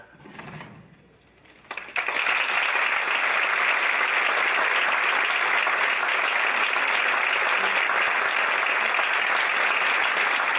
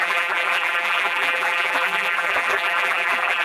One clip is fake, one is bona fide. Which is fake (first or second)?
second